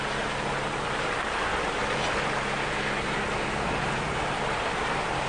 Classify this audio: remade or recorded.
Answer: recorded